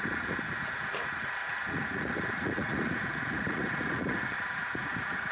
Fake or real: fake